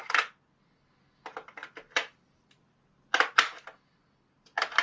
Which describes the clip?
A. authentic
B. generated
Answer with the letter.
A